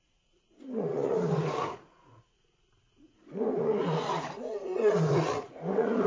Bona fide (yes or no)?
no